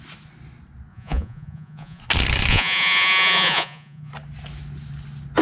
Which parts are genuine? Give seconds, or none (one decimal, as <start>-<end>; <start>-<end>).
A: 0.0-0.9; 2.0-2.5; 4.1-5.4

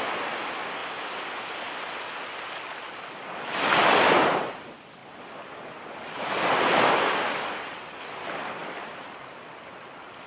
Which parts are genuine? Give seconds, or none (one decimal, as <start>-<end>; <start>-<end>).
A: 0.0-10.3

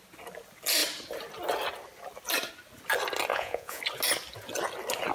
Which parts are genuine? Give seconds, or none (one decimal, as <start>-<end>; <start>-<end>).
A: 0.0-3.3; 3.8-5.1

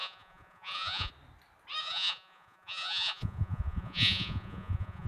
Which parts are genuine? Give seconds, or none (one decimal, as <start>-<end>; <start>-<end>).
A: 1.1-1.8

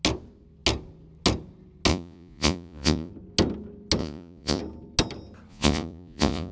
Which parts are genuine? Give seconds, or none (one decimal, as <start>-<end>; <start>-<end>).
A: 0.0-1.9; 3.1-4.0; 4.6-5.5

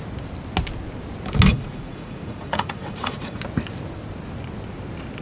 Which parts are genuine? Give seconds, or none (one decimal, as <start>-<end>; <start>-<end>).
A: 0.0-1.5; 3.4-5.2

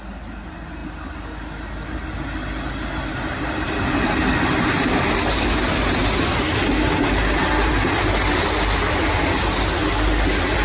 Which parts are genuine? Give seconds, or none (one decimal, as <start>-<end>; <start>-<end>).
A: 0.0-10.6